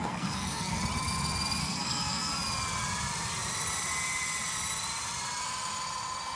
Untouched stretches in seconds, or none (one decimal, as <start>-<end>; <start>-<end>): 0.8-1.6; 2.3-6.4